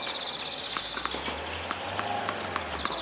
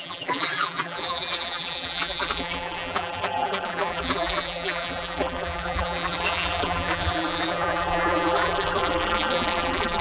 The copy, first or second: second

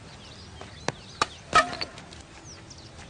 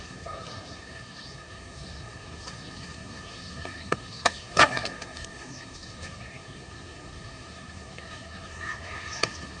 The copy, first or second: second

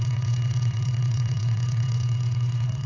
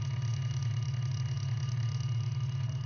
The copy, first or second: first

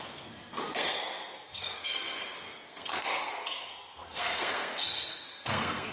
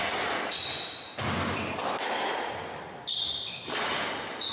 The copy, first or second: first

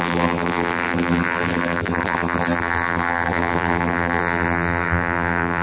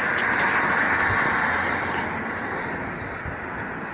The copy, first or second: first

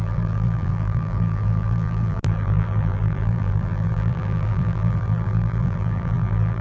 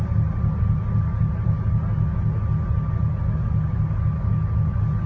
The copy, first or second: first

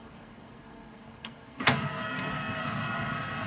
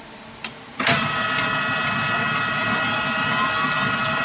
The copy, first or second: first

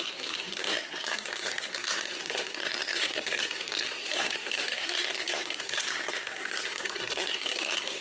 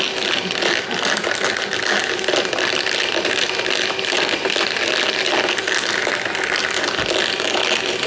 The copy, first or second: first